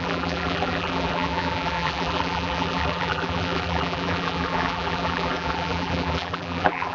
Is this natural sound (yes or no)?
no